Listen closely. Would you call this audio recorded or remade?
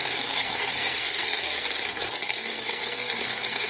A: remade